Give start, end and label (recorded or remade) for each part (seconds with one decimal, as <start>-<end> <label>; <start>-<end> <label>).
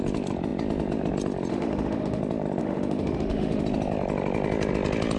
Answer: 0.0-1.5 recorded; 1.5-2.2 remade; 2.2-2.6 recorded; 2.6-3.6 remade; 3.6-5.2 recorded